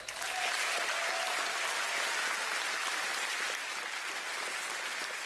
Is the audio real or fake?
real